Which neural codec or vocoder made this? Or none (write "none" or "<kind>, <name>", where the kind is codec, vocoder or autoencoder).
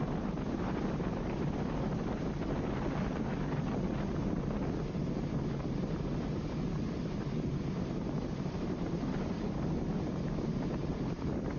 none